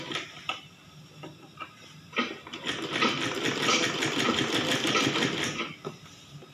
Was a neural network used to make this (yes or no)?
no